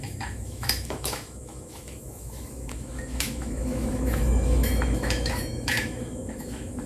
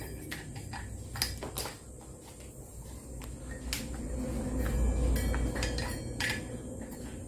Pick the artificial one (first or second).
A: first